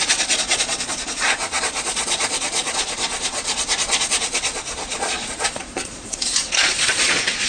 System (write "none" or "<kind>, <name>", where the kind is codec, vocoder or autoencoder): vocoder, Vocos